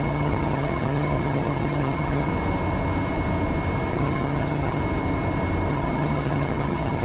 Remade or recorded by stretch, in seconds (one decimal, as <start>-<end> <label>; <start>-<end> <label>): 0.0-2.3 remade; 2.3-3.9 recorded; 3.9-4.8 remade; 4.8-5.7 recorded; 5.7-7.0 remade